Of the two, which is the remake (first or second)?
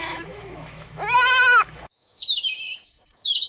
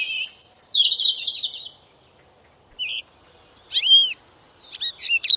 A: first